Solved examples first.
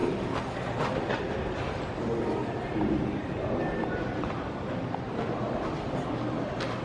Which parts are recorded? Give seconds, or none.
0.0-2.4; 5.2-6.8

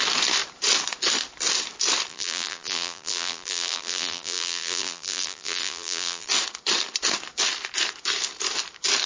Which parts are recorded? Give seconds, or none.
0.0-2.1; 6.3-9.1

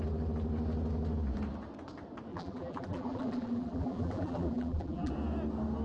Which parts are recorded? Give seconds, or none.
0.0-2.3; 5.1-5.8